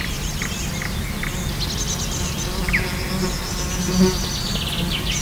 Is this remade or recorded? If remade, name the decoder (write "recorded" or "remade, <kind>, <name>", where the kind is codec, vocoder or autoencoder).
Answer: recorded